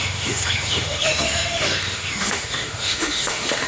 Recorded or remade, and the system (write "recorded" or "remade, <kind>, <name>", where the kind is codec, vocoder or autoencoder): remade, autoencoder, DAC-VAE